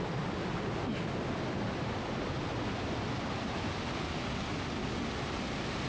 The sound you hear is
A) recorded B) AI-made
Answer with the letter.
A